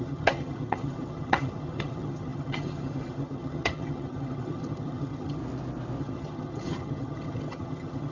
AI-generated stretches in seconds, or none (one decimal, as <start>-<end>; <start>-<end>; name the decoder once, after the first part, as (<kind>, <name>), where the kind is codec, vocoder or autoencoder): 0.0-5.4 (vocoder, HiFi-GAN); 6.0-8.1